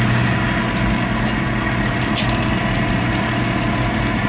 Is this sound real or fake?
real